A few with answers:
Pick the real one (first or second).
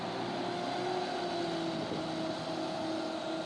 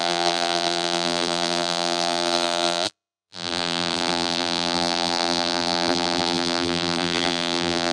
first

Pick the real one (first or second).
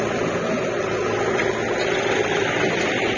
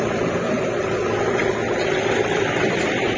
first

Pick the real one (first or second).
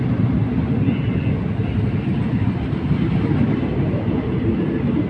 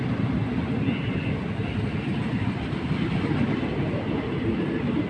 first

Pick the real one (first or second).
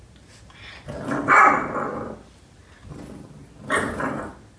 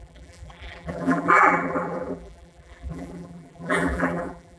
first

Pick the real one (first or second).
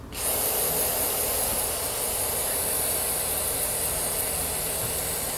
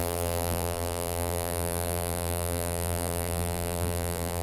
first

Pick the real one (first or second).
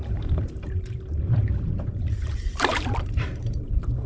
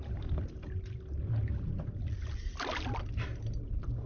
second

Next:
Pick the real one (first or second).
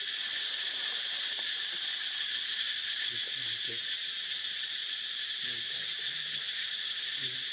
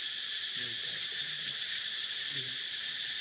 first